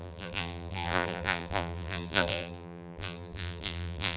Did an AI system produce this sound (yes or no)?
yes